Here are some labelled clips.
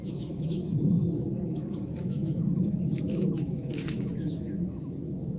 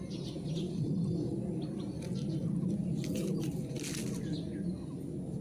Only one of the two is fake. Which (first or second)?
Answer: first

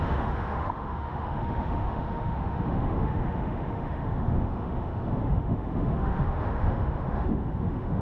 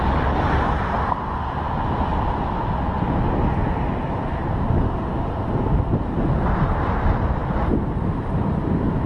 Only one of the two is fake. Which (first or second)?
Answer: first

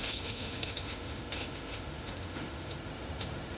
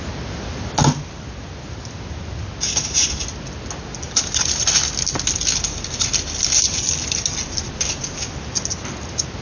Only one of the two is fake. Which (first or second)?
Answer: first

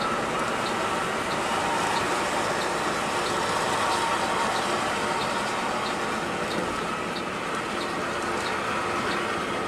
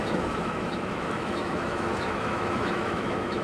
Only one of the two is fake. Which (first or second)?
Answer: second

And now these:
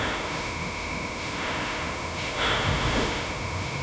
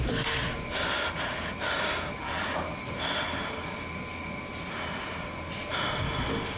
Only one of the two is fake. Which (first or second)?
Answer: first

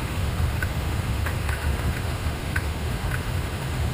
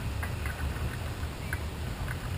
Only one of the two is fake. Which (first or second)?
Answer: first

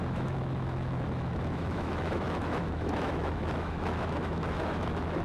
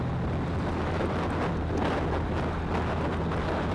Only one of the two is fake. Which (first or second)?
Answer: first